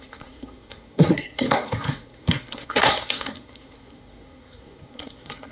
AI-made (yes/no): yes